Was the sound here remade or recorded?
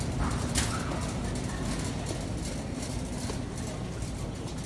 recorded